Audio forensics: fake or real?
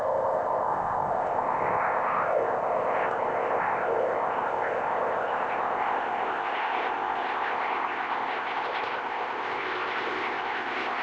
fake